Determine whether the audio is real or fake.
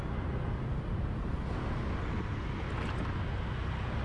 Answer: real